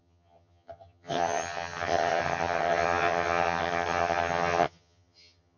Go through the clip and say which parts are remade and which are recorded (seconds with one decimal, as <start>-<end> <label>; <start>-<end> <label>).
0.0-5.6 remade